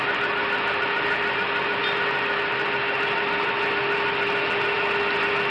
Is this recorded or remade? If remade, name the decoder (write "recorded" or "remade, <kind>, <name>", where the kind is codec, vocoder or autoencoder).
recorded